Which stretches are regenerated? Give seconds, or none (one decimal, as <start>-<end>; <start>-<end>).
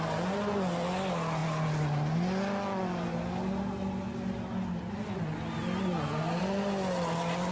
none